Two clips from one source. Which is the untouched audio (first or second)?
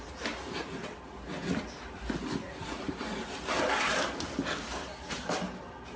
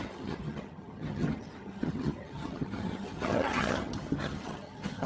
first